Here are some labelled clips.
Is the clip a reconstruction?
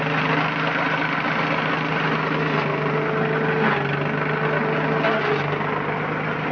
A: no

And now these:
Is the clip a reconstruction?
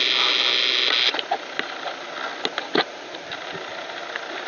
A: no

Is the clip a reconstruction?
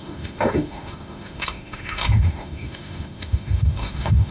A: yes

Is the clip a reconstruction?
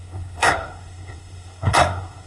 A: yes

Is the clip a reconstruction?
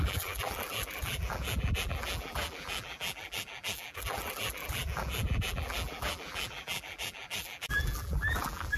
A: yes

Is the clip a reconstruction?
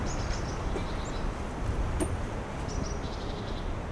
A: no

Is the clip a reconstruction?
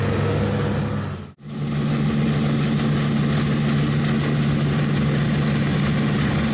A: no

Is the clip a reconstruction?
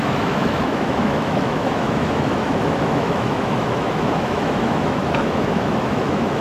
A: yes